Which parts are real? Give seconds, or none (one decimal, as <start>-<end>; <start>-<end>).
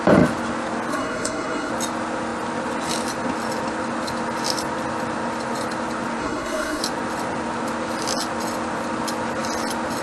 0.0-0.9; 1.7-6.2; 6.8-10.0